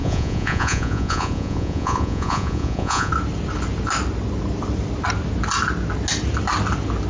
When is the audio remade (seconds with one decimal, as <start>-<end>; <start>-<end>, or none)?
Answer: 0.0-3.1